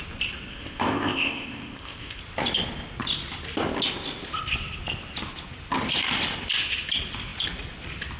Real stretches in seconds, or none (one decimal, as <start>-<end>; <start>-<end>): 0.0-0.5; 2.2-8.2